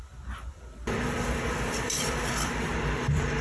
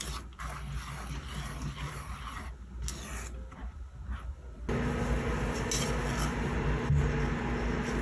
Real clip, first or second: second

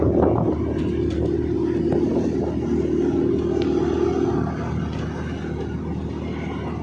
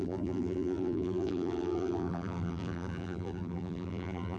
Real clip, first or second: first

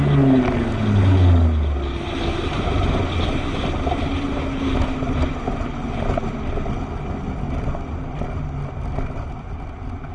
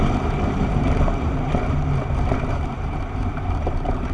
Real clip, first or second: first